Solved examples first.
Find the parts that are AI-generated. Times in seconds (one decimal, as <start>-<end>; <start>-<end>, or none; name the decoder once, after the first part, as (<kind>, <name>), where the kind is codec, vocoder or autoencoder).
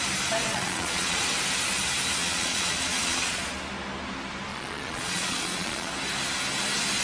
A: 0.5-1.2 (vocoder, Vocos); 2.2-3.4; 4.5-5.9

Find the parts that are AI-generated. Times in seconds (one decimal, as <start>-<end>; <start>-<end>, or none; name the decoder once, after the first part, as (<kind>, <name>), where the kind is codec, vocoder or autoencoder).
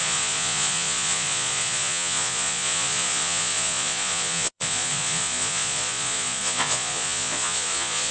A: 0.0-8.1 (vocoder, Vocos)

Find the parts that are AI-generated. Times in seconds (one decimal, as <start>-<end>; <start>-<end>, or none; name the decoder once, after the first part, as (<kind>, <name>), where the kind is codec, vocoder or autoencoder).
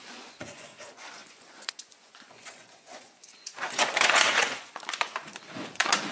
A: 0.0-6.1 (vocoder, Vocos)